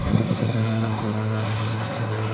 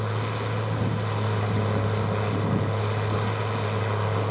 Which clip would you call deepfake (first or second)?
first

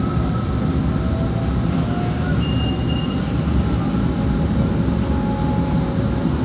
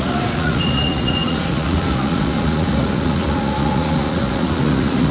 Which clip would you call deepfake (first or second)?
second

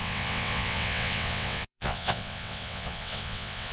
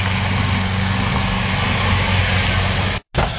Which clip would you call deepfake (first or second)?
first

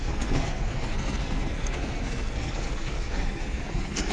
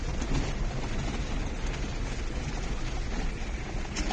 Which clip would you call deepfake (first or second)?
first